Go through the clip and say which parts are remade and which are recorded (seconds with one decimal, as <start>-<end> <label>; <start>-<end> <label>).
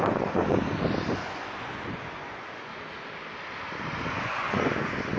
0.0-0.5 remade; 0.5-1.1 recorded; 1.1-2.7 remade; 2.7-4.1 recorded; 4.1-5.2 remade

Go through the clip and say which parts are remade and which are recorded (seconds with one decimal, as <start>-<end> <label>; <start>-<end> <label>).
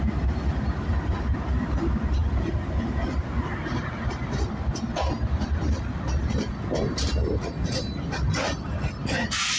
0.0-9.6 recorded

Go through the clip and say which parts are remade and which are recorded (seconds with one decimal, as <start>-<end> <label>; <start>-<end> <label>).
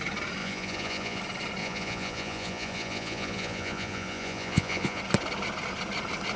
0.0-0.4 recorded; 0.4-1.2 remade; 1.2-1.6 recorded; 1.6-5.0 remade; 5.0-6.4 recorded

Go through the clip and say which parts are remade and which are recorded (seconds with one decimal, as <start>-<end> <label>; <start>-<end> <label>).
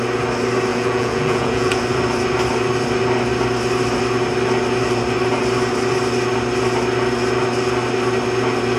0.0-0.7 recorded; 0.7-1.8 remade; 1.8-8.8 recorded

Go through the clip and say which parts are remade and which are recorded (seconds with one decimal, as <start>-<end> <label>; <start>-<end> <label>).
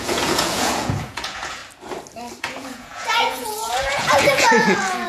0.0-1.6 remade; 1.6-2.4 recorded; 2.4-5.1 remade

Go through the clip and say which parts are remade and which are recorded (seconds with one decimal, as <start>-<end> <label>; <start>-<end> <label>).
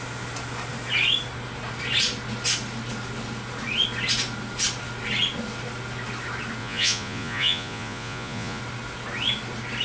0.0-6.6 recorded; 6.6-8.6 remade; 8.6-9.8 recorded